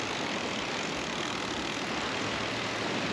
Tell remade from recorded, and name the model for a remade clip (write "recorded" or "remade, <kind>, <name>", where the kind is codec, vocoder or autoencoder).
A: recorded